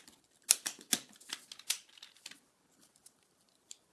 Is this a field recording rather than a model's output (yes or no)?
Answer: yes